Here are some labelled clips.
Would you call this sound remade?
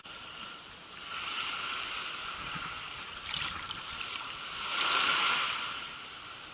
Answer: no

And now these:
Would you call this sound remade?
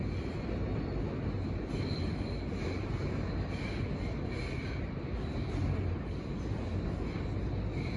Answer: no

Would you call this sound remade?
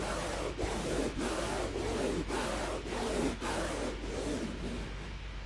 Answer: no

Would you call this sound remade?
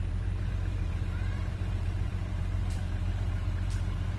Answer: yes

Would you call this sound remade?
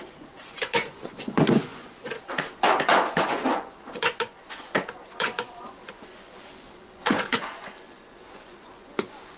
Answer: yes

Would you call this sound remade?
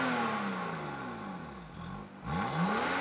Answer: no